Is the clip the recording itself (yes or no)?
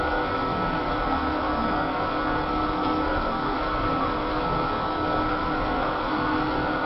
no